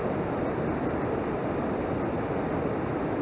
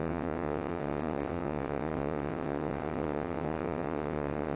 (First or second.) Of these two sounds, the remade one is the second